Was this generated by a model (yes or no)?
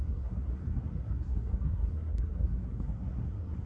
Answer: yes